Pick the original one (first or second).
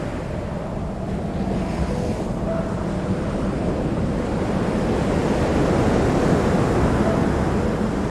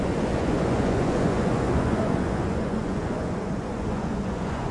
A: first